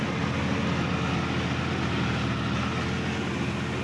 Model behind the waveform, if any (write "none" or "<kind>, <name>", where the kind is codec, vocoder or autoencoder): none